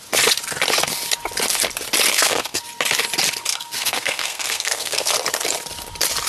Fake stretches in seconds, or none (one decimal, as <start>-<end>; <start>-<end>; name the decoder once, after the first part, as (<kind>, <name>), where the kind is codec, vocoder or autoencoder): 2.1-2.6 (codec, SNAC); 3.5-5.1